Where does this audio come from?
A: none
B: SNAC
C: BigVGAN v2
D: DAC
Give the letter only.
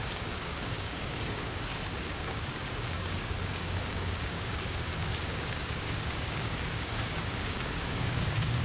D